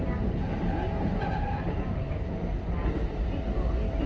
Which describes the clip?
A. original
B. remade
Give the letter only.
A